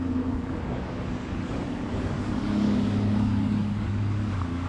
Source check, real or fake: fake